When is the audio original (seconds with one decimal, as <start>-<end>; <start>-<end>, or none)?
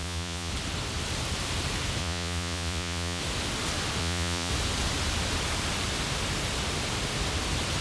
0.5-2.0; 3.2-4.0; 4.5-7.8